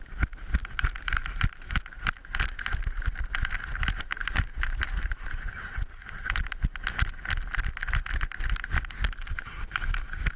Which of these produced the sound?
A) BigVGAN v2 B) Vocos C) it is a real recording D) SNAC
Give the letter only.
C